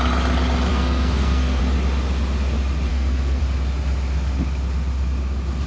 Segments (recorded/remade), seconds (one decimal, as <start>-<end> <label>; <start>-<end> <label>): 0.0-0.7 recorded; 0.7-1.6 remade; 1.6-2.9 recorded; 2.9-3.4 remade; 3.4-5.7 recorded